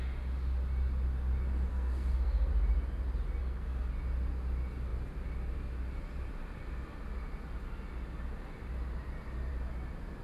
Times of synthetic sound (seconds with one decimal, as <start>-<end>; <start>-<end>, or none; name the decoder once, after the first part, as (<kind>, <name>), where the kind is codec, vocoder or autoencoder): 1.7-2.5 (codec, SNAC); 3.4-3.9